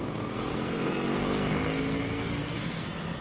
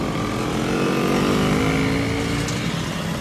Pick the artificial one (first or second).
first